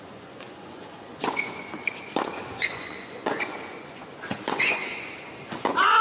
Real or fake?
fake